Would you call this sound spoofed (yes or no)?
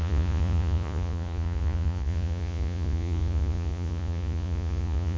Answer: yes